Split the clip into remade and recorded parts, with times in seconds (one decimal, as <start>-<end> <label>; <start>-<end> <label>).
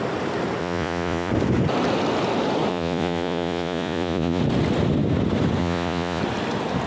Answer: 0.0-0.6 recorded; 0.6-1.3 remade; 1.3-2.7 recorded; 2.7-4.4 remade; 4.4-5.6 recorded; 5.6-6.2 remade; 6.2-6.9 recorded